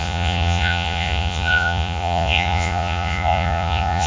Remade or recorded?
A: remade